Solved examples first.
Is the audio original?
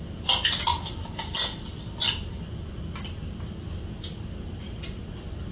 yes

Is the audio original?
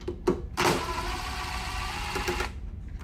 no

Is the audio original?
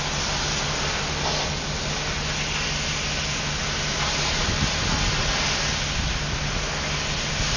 yes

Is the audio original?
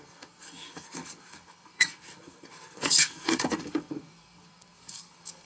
no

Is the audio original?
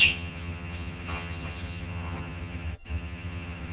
no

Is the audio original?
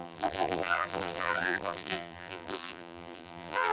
no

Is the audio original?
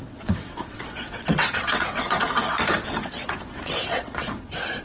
no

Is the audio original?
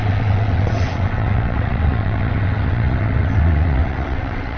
no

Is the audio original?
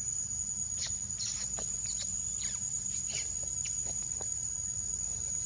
yes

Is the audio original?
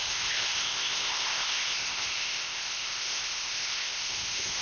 no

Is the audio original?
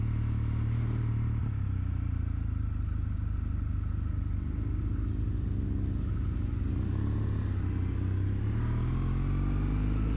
yes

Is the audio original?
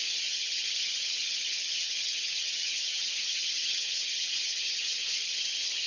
no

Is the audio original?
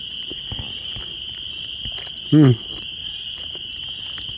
yes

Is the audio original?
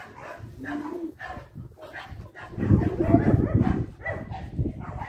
yes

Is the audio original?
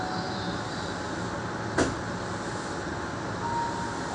yes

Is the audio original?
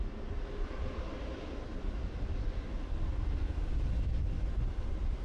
yes